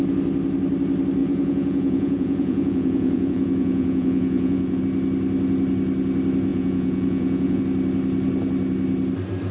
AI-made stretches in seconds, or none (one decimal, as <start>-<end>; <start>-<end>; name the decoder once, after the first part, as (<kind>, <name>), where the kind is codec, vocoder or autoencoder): 1.2-4.8 (vocoder, Vocos); 6.5-7.6